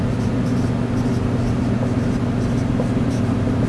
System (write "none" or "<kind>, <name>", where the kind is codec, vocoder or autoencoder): none